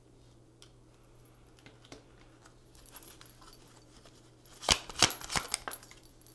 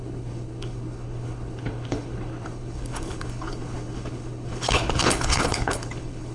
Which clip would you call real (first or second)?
first